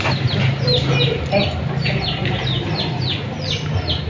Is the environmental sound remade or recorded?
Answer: recorded